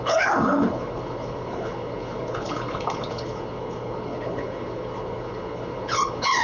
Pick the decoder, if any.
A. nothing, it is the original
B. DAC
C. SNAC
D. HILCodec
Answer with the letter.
D